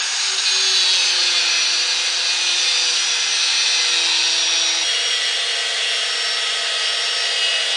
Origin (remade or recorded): recorded